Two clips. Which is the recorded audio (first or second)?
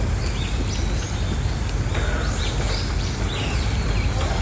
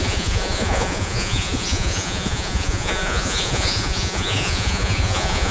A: first